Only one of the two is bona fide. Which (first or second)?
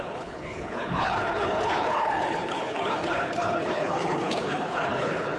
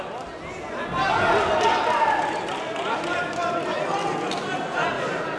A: second